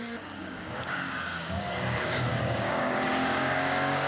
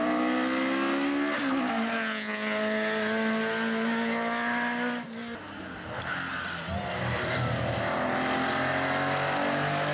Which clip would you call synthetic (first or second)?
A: first